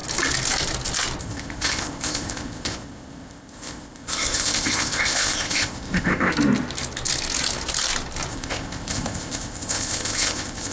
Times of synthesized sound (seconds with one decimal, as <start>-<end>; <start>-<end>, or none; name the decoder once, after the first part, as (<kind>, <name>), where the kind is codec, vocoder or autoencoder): 1.2-6.3 (codec, ZipCodec); 8.3-10.7